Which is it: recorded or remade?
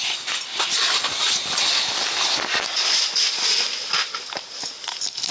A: recorded